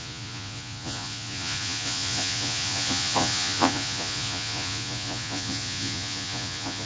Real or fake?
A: fake